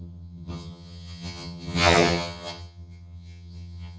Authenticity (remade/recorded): remade